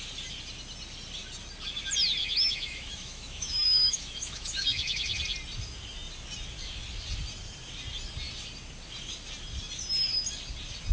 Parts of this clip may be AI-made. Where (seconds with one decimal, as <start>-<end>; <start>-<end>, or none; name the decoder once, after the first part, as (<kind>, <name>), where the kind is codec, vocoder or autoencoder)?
2.2-5.2 (autoencoder, DAC-VAE)